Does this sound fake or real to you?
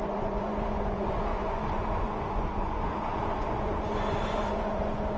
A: fake